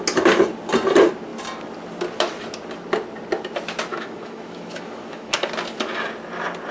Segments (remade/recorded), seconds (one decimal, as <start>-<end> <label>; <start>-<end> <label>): 0.0-3.9 recorded; 3.9-5.5 remade; 5.5-6.7 recorded